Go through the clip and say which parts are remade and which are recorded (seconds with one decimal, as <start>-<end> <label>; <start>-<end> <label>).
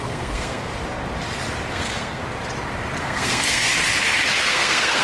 0.0-0.7 remade; 0.7-1.7 recorded; 1.7-2.2 remade; 2.2-3.0 recorded; 3.0-3.7 remade; 3.7-4.4 recorded; 4.4-5.0 remade